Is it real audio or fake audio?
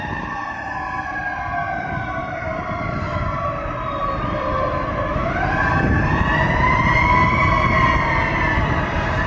fake